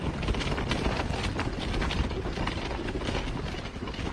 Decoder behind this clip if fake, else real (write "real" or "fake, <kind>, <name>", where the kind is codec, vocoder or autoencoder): real